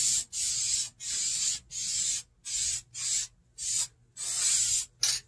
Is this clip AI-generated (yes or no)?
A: no